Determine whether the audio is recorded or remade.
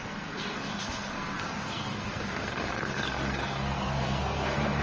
remade